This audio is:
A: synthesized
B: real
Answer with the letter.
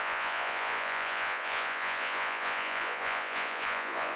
A